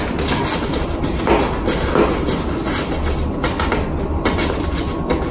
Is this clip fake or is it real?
real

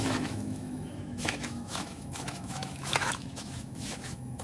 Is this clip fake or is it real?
fake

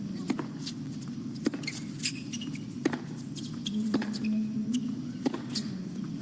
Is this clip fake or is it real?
real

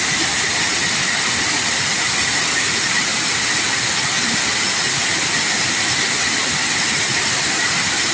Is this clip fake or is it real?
real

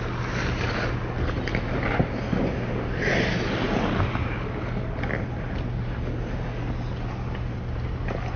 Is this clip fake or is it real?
real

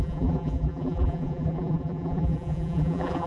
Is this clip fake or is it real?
fake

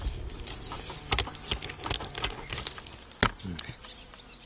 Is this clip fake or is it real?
real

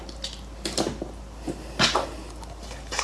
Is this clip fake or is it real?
real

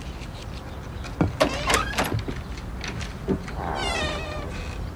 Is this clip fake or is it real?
real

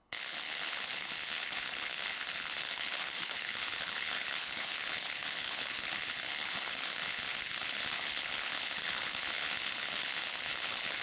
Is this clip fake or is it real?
fake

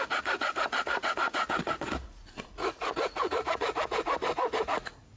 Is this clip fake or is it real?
fake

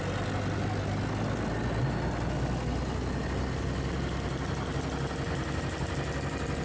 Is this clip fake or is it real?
real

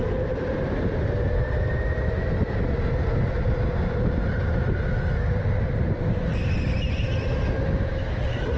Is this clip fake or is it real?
real